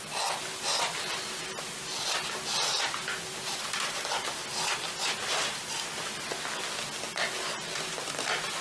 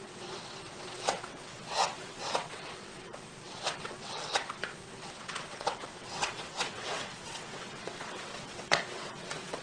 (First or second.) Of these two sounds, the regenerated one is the second